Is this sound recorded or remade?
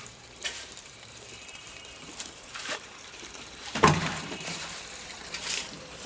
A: remade